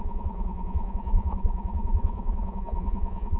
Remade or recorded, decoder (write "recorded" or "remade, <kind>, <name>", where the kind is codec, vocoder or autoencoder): remade, vocoder, Vocos